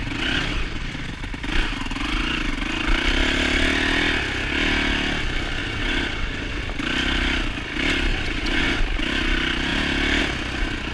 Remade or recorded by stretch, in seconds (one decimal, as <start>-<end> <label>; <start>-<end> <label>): 0.0-1.1 remade; 1.1-5.6 recorded; 5.6-6.6 remade; 6.6-8.1 recorded; 8.1-8.8 remade; 8.8-10.9 recorded